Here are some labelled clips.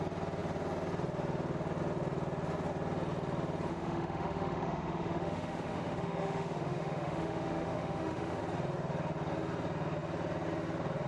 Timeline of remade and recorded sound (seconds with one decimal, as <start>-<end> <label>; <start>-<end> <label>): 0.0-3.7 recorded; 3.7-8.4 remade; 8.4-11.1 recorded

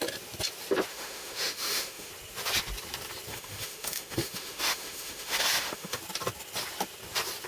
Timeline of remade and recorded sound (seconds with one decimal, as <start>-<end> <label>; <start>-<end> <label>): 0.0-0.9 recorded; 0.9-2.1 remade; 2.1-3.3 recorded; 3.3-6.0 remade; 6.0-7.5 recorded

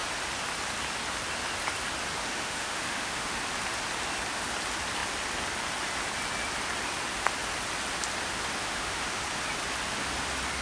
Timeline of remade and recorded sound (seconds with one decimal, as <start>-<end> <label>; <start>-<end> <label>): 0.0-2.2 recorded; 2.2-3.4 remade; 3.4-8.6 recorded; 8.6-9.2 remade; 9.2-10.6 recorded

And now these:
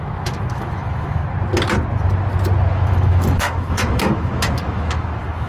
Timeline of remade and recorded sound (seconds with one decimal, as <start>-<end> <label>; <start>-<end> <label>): 0.0-1.2 remade; 1.2-2.7 recorded; 2.7-5.5 remade

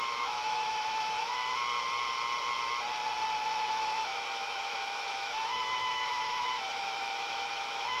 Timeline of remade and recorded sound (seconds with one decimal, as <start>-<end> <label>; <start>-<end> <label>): 0.0-1.4 remade; 1.4-3.7 recorded; 3.7-8.0 remade